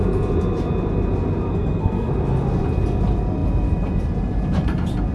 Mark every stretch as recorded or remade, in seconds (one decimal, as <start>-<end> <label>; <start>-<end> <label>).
0.0-1.5 recorded; 1.5-2.1 remade; 2.1-5.1 recorded